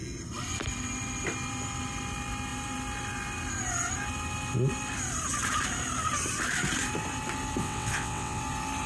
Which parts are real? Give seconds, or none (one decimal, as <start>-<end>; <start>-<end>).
0.0-7.6; 8.4-8.9